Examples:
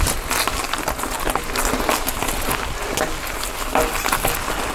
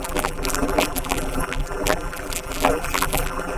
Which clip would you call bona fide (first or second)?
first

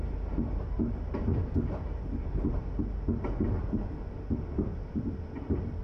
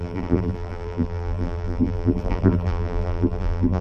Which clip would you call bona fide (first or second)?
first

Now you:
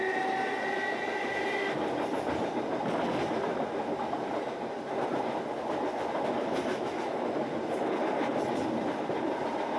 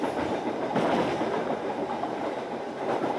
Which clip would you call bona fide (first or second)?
first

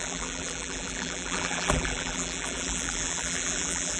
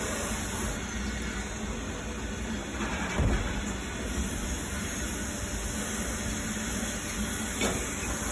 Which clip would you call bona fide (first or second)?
second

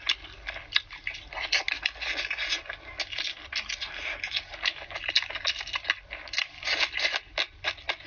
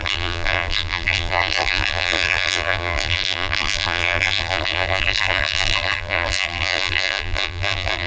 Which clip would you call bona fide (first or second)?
first